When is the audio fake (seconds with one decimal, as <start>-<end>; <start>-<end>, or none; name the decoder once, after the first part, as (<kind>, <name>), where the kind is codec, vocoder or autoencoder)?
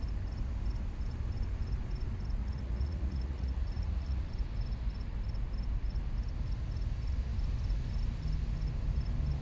2.4-4.3 (vocoder, Vocos)